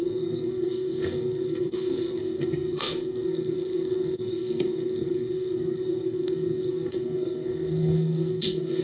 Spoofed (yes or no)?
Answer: yes